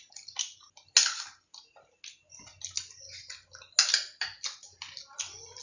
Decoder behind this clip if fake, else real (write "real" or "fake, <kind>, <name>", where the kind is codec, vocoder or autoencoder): real